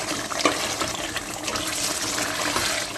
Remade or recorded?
recorded